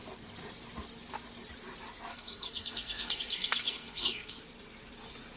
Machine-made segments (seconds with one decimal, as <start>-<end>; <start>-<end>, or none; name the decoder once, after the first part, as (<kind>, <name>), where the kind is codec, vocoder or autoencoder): 2.1-4.4 (codec, SNAC)